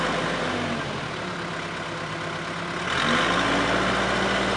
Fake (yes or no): no